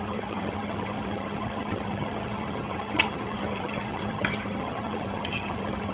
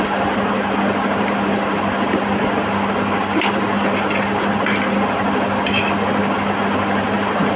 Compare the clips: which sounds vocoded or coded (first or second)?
first